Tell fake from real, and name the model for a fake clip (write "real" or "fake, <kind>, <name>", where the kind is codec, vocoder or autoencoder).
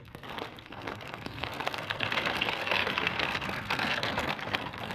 fake, codec, SNAC